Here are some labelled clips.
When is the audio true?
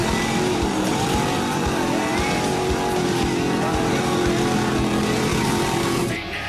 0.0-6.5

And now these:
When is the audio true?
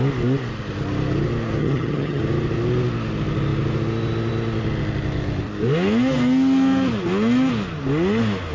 0.0-1.6; 2.2-8.5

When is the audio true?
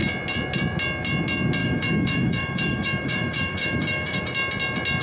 0.0-1.6; 4.2-5.0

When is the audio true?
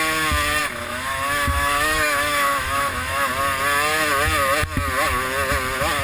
0.0-0.6; 3.3-6.0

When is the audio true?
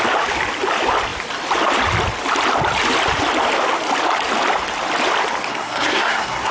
0.0-5.5